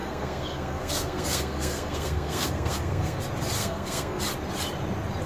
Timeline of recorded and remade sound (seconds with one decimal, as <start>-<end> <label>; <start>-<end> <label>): 0.0-3.2 remade; 3.2-3.6 recorded; 3.6-4.2 remade; 4.2-5.3 recorded